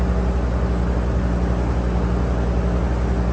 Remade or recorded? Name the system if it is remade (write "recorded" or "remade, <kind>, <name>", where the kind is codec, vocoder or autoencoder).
recorded